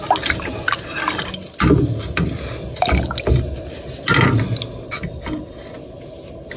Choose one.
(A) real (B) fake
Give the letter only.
A